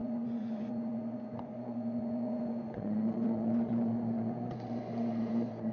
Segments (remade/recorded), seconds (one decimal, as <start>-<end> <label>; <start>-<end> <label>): 0.0-5.7 remade